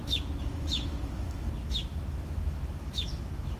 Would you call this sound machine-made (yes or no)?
yes